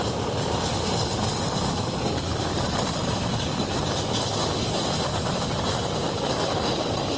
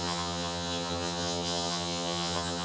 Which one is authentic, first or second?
first